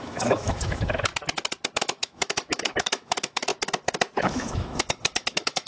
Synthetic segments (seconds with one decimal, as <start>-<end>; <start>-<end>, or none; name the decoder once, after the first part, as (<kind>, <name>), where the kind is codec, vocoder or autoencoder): 0.0-1.1 (autoencoder, DAC-VAE); 1.8-3.5; 4.2-5.7